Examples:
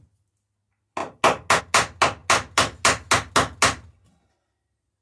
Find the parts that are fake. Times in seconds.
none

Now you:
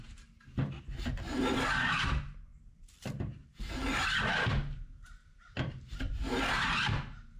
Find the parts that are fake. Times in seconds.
none

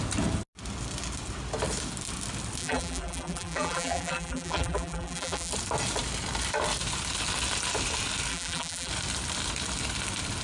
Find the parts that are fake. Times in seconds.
2.6-5.5 (vocoder, BigVGAN v2); 8.3-8.9

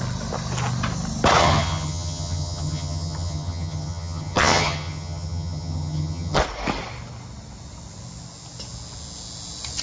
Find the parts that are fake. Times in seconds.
1.4-6.4 (vocoder, HiFi-GAN)

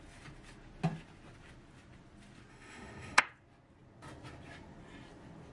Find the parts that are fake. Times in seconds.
2.5-3.2 (autoencoder, DAC-VAE)

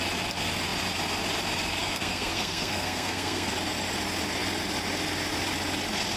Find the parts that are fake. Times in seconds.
1.8-3.5 (codec, SNAC)